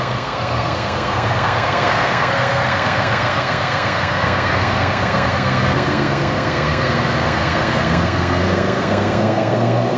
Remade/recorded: remade